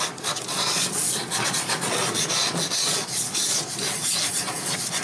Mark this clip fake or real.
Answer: fake